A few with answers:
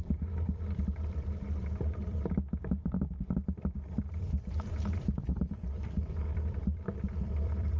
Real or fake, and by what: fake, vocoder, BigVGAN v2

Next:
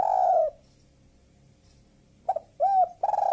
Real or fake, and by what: real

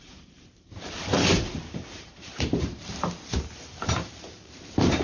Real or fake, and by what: fake, vocoder, BigVGAN v2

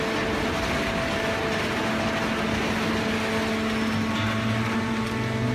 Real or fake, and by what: real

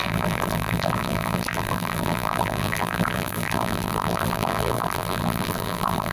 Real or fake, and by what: fake, vocoder, BigVGAN v2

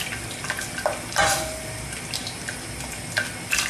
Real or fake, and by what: real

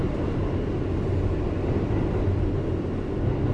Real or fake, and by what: real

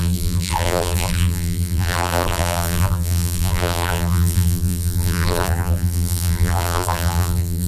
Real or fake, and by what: fake, vocoder, BigVGAN v2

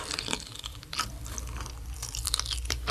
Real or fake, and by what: fake, vocoder, BigVGAN v2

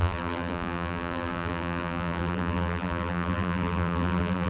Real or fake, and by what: fake, vocoder, BigVGAN v2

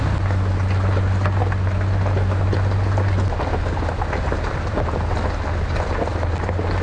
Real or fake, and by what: real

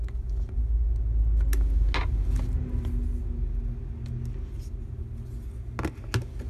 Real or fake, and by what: real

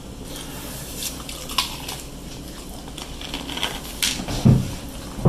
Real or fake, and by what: real